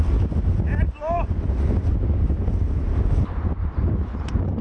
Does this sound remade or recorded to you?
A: recorded